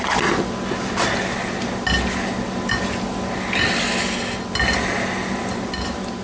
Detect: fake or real real